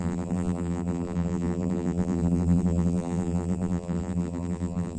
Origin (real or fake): fake